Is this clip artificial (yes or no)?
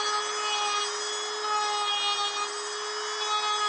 no